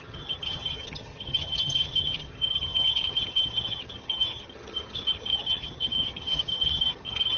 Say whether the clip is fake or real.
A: fake